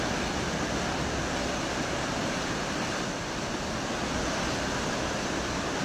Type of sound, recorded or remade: remade